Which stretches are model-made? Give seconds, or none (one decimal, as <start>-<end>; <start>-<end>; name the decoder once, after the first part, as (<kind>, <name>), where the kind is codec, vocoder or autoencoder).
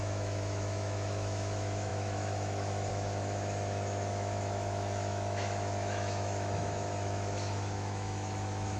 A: 0.0-8.8 (autoencoder, DAC-VAE)